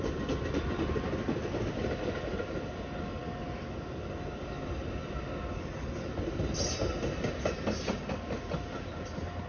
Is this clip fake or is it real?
real